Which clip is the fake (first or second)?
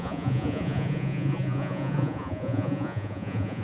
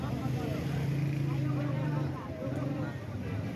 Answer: first